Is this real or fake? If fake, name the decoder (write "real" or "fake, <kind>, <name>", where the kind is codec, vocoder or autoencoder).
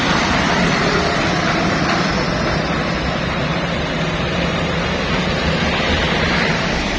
fake, vocoder, BigVGAN v2